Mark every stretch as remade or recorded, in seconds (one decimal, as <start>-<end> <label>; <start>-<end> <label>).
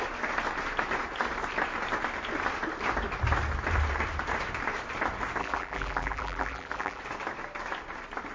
0.0-5.4 recorded; 5.4-7.0 remade; 7.0-8.3 recorded